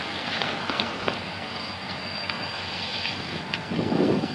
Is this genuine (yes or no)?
no